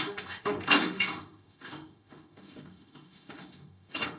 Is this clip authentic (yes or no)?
no